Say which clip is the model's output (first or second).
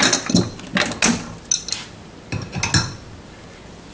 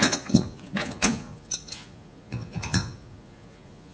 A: second